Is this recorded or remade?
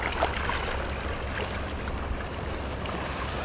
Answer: recorded